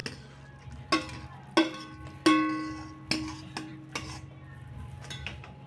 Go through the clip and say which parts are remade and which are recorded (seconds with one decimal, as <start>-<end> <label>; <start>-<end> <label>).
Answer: 0.0-5.7 recorded